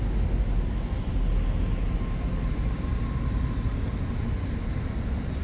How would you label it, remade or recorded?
recorded